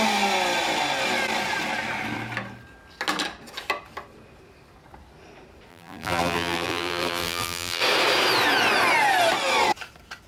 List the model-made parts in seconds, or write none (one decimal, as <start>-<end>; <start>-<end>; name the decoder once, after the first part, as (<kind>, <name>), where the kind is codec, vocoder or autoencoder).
5.7-7.8 (vocoder, BigVGAN v2)